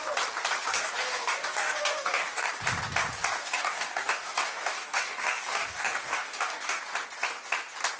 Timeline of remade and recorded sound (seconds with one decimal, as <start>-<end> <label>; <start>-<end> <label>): 0.0-0.7 recorded; 0.7-2.5 remade; 2.5-3.4 recorded; 3.4-6.8 remade; 6.8-8.0 recorded